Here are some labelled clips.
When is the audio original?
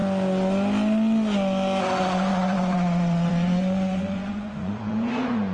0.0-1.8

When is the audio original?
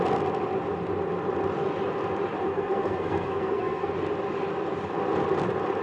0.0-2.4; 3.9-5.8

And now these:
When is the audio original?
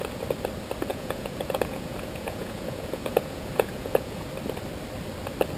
0.0-0.9; 4.3-5.6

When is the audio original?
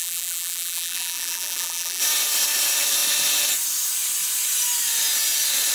2.0-5.7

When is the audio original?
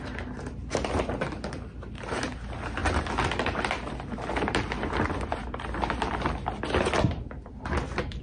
2.8-4.5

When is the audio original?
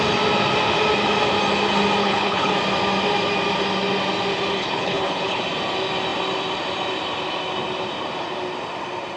0.0-2.0; 2.5-4.6; 5.4-9.2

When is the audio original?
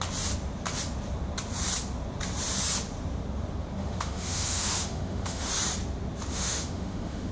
0.0-3.8; 5.5-6.3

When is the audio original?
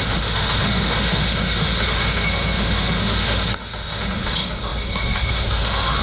none